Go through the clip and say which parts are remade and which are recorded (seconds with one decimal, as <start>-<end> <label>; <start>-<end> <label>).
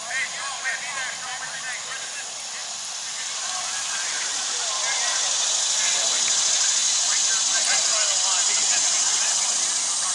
0.0-10.1 recorded